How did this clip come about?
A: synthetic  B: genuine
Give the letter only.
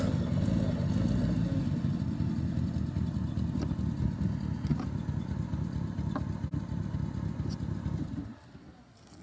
B